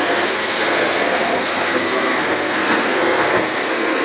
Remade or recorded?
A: remade